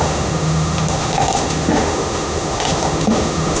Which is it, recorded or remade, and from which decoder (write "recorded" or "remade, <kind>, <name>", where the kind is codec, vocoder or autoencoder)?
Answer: remade, autoencoder, DAC-VAE